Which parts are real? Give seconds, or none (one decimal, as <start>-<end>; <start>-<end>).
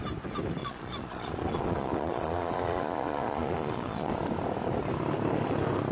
0.0-0.6; 4.1-5.9